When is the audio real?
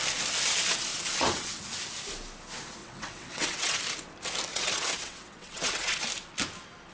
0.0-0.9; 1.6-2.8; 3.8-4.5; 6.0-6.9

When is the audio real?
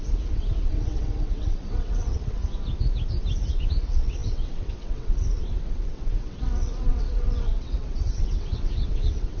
2.4-3.6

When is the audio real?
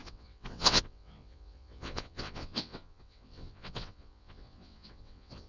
none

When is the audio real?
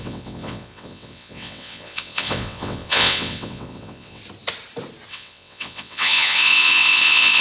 4.2-5.1